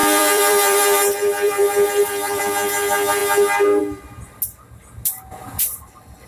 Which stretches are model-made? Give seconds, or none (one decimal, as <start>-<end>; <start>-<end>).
0.0-2.4; 5.4-6.3